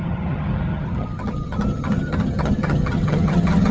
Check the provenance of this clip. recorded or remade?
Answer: remade